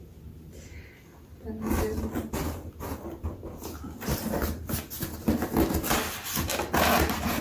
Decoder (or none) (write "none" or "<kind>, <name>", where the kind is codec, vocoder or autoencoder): none